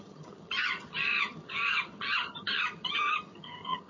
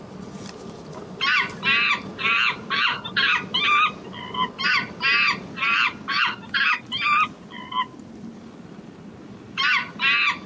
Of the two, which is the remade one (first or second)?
first